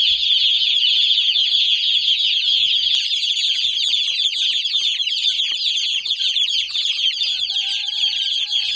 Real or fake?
fake